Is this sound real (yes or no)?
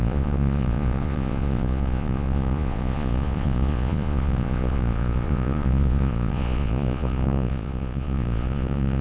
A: no